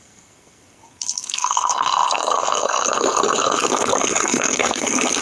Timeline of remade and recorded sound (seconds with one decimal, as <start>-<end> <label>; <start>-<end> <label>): 0.0-5.2 remade